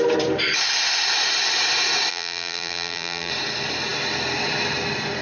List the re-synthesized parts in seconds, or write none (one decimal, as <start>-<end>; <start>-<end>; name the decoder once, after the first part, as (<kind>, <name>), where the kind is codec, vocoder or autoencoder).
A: 2.1-3.3 (vocoder, BigVGAN v2)